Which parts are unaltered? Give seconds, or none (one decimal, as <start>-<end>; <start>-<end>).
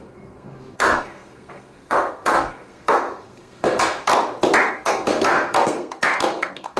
4.1-4.7